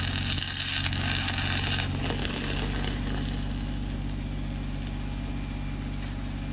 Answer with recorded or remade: recorded